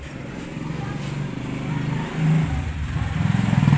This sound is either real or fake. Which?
real